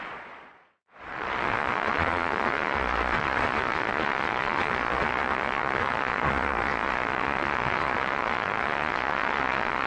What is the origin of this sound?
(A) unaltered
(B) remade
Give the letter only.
B